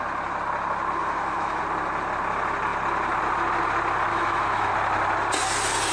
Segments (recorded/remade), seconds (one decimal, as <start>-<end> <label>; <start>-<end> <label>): 0.0-1.0 recorded; 1.0-1.6 remade; 1.6-4.1 recorded; 4.1-4.7 remade; 4.7-5.9 recorded